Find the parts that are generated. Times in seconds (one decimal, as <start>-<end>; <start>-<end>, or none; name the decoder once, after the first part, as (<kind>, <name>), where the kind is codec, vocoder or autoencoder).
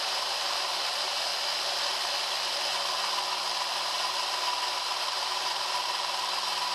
0.0-1.3 (vocoder, BigVGAN v2); 5.0-6.7